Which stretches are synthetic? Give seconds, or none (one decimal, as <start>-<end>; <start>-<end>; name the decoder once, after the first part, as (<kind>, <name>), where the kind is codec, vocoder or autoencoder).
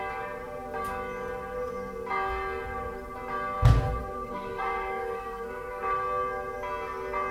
4.0-5.8 (codec, SNAC)